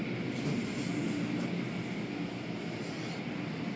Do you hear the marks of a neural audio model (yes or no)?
no